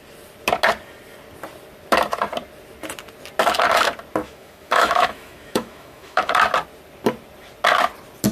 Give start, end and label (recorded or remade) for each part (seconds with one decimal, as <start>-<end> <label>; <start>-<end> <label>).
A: 0.0-4.2 recorded; 4.2-6.3 remade; 6.3-8.3 recorded

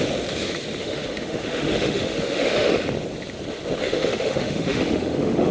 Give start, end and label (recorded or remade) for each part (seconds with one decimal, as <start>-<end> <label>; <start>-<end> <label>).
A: 0.0-0.8 recorded; 0.8-2.7 remade; 2.7-3.8 recorded; 3.8-5.5 remade

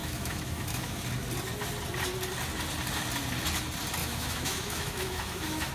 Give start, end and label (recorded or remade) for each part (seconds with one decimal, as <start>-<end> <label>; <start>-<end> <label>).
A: 0.0-1.0 remade; 1.0-4.0 recorded; 4.0-5.7 remade

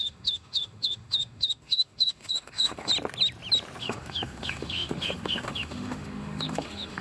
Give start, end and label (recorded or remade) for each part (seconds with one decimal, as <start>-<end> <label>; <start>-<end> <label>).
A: 0.0-2.9 remade; 2.9-3.8 recorded; 3.8-7.0 remade

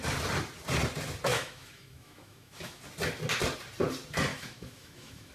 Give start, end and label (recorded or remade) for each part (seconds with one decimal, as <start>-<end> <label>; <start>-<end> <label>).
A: 0.0-1.3 recorded; 1.3-2.8 remade; 2.8-4.3 recorded; 4.3-5.3 remade